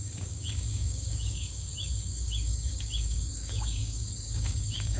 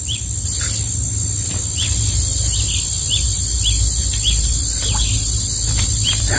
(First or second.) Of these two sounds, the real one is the second